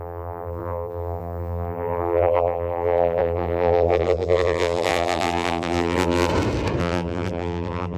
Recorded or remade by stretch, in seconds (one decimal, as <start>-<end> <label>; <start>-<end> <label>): 0.0-6.3 remade; 6.3-6.8 recorded; 6.8-8.0 remade